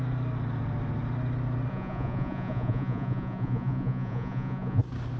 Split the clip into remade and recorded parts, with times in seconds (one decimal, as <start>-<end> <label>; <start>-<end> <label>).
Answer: 0.0-1.7 recorded; 1.7-4.8 remade; 4.8-5.2 recorded